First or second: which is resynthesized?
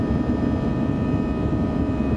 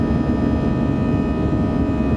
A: first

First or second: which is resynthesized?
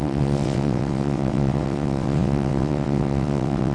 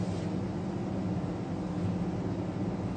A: first